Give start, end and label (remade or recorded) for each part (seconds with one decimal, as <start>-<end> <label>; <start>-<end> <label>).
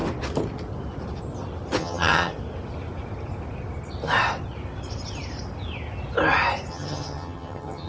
0.0-1.8 recorded; 1.8-2.3 remade; 2.3-6.7 recorded; 6.7-7.9 remade